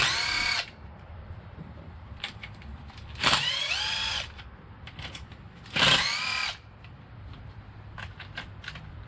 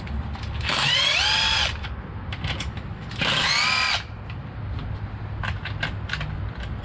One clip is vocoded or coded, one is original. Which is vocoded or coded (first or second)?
first